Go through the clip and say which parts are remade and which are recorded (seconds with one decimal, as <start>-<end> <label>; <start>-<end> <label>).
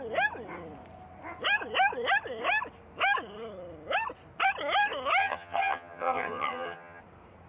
0.0-5.2 recorded; 5.2-7.0 remade; 7.0-7.5 recorded